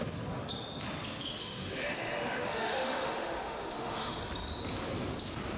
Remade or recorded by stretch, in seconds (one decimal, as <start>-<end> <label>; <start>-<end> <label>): 0.0-1.4 recorded; 1.4-4.2 remade; 4.2-5.6 recorded